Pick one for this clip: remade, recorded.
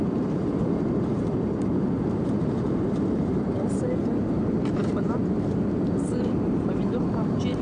remade